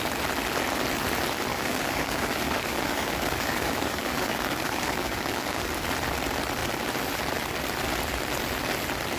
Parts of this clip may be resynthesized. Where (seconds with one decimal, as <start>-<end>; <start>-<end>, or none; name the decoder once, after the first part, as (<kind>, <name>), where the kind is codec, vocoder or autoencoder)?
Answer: 1.5-5.8 (codec, DAC)